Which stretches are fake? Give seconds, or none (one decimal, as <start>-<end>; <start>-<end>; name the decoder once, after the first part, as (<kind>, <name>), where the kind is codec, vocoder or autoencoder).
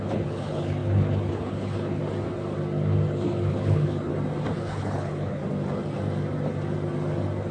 0.0-2.0 (codec, HILCodec); 3.5-4.1; 4.6-5.4